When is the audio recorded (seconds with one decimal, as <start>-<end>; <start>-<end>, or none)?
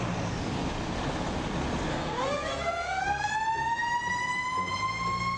0.0-1.9; 3.3-5.4